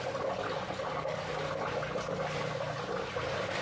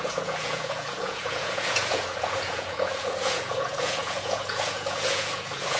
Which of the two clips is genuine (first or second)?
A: first